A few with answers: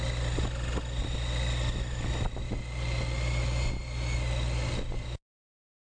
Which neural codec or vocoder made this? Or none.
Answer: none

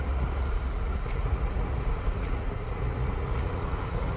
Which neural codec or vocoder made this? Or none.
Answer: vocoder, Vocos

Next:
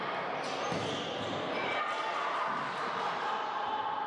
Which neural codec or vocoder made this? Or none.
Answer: none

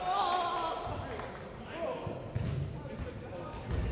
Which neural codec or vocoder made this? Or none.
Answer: none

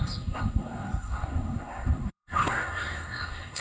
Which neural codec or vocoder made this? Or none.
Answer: codec, SNAC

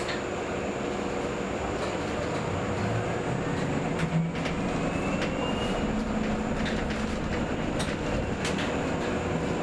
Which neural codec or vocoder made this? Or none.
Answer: none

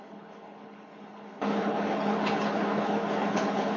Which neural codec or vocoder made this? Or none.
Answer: codec, HILCodec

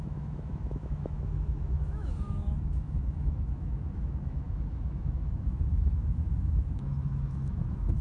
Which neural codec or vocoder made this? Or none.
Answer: autoencoder, DAC-VAE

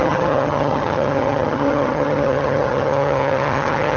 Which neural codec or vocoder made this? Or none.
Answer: vocoder, HiFi-GAN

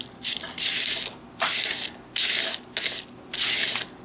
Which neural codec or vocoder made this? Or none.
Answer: none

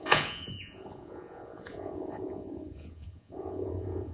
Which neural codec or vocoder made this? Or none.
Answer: vocoder, Vocos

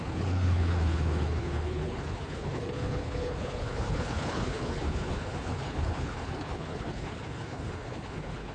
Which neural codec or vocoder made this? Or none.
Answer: codec, HILCodec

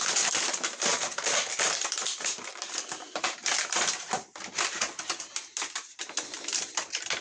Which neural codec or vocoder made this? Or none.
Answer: vocoder, BigVGAN v2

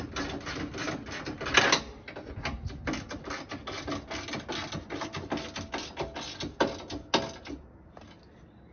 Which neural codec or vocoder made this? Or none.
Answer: none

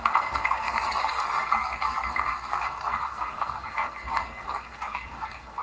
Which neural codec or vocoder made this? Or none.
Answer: codec, SNAC